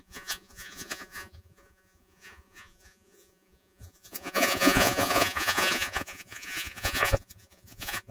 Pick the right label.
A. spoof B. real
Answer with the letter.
A